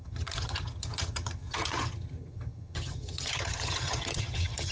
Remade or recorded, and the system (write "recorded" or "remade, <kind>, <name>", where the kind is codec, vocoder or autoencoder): remade, vocoder, HiFi-GAN